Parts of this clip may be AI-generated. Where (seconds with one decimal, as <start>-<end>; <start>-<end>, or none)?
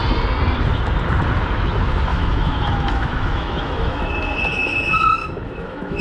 2.1-4.1; 5.2-6.0